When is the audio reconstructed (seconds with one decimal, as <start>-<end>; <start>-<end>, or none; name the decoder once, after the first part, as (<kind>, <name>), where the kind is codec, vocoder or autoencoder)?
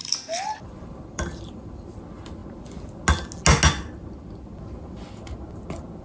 0.0-2.0 (vocoder, BigVGAN v2)